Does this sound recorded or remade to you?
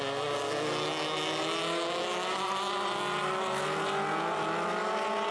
recorded